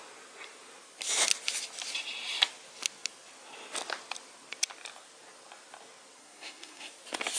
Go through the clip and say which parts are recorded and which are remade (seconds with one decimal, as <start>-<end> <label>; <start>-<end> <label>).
0.0-6.2 recorded; 6.2-6.9 remade; 6.9-7.4 recorded